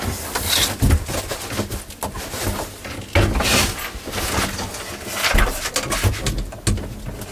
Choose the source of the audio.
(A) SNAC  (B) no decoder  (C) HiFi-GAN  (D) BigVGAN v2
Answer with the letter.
B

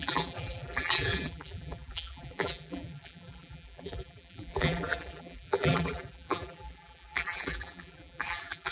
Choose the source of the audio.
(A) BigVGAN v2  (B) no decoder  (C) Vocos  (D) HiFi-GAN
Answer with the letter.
A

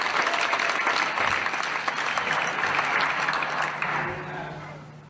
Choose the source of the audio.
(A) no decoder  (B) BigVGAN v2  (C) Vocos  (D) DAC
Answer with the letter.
A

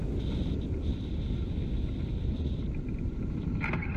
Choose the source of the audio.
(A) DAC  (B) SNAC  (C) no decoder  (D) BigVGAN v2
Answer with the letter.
C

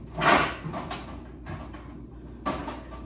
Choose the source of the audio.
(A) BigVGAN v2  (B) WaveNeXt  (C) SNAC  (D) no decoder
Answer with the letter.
D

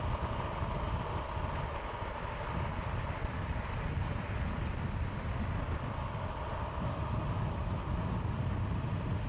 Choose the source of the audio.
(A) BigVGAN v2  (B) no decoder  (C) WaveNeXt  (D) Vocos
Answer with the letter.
B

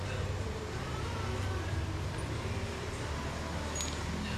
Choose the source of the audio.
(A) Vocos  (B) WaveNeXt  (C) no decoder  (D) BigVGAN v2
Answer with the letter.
C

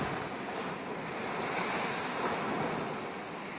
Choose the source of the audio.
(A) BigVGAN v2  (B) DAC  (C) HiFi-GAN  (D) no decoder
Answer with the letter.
D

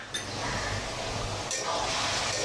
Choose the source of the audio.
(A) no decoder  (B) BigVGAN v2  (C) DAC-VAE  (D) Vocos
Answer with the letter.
A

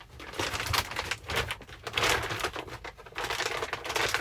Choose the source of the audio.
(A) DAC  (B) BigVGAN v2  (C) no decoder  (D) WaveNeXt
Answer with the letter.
C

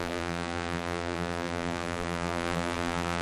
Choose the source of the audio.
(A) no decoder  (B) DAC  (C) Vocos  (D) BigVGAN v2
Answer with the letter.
D